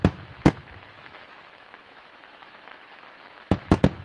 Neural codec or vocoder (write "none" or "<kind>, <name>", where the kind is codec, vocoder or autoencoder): autoencoder, DAC-VAE